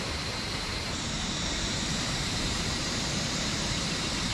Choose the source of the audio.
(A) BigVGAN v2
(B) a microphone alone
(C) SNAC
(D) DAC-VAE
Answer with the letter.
A